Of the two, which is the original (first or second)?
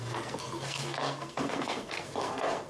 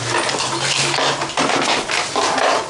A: second